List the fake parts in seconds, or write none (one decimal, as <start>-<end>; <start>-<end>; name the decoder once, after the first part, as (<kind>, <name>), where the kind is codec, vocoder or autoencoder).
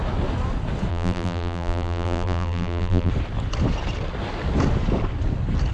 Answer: 0.9-3.1 (vocoder, BigVGAN v2)